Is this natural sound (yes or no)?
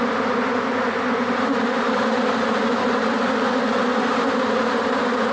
yes